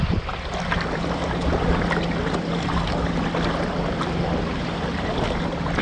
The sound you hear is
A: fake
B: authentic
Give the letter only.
B